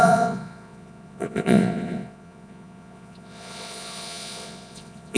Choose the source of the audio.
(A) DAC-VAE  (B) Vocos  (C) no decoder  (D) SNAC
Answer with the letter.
B